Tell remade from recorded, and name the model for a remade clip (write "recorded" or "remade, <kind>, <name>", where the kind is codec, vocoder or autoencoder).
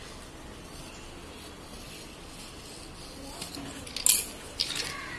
recorded